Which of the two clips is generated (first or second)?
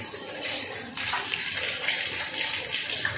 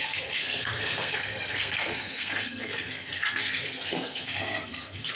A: second